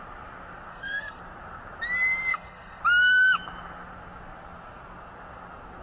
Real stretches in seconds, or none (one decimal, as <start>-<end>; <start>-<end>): 0.0-0.7; 1.2-2.3; 2.8-5.8